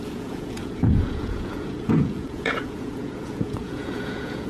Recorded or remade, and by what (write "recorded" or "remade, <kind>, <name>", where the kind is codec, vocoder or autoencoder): remade, vocoder, Vocos